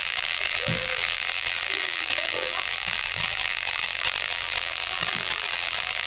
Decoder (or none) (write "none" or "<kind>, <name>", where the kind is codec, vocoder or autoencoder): vocoder, BigVGAN v2